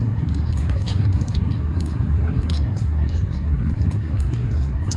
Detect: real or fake fake